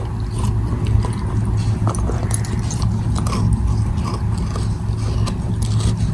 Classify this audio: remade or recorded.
recorded